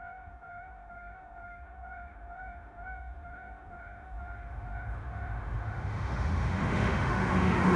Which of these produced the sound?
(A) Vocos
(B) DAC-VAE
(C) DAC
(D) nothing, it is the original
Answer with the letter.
B